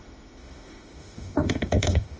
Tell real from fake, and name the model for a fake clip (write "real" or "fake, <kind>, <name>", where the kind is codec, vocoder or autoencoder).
fake, autoencoder, DAC-VAE